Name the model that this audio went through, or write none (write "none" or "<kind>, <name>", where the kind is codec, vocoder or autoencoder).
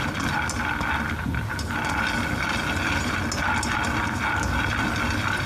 none